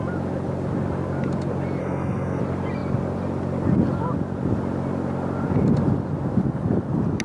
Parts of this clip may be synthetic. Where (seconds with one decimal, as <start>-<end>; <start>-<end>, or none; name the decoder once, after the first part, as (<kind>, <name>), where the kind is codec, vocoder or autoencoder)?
1.8-2.4 (codec, SNAC)